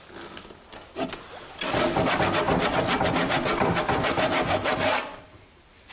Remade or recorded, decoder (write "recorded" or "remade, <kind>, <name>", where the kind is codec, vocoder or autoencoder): recorded